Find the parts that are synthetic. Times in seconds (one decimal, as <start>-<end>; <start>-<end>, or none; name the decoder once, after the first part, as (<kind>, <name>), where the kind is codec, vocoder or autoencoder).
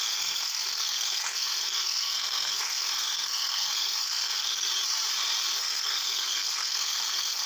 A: 0.0-4.7 (codec, SNAC); 5.5-7.5